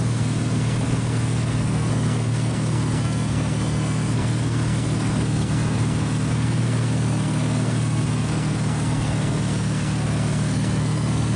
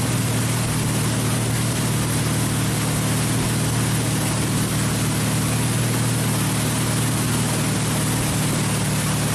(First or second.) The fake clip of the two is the first